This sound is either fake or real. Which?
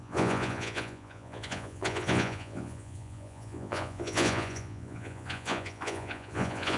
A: fake